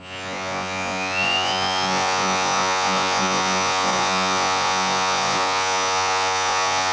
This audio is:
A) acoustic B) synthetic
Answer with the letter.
B